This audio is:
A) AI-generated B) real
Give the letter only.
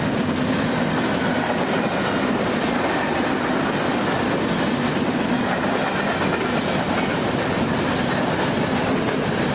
B